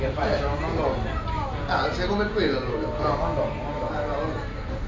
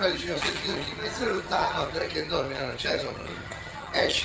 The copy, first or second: second